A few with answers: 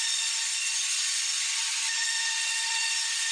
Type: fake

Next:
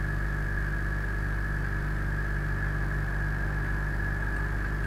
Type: real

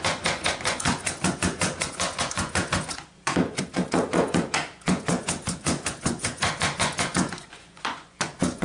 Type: fake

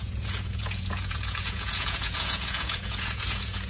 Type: fake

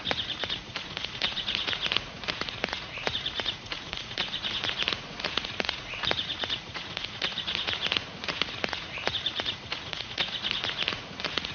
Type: fake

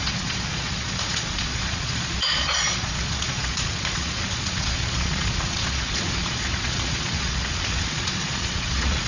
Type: fake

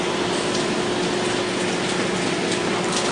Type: real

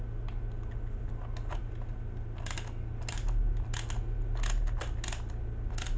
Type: real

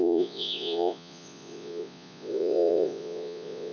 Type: fake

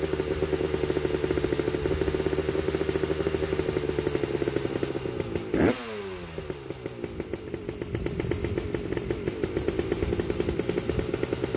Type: real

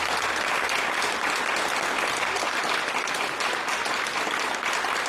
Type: real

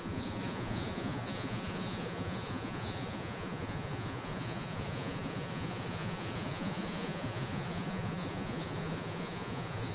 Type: fake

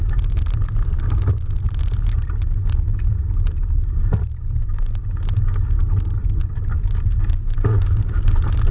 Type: real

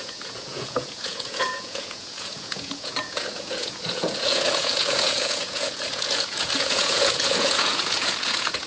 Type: fake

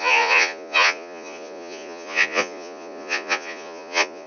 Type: fake